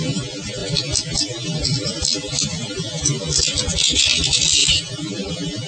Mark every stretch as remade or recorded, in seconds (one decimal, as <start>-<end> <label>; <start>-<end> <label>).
0.0-0.6 recorded; 0.6-4.0 remade; 4.0-4.6 recorded; 4.6-5.3 remade; 5.3-5.7 recorded